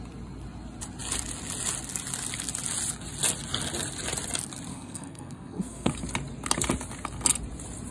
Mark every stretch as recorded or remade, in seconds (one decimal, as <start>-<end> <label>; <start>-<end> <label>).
0.0-4.7 recorded; 4.7-5.9 remade; 5.9-7.9 recorded